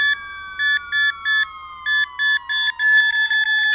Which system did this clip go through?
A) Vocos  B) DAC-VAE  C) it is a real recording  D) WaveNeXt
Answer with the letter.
C